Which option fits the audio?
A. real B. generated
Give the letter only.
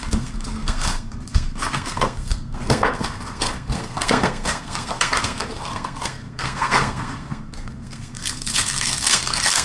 B